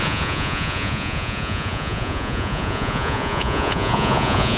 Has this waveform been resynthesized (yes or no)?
yes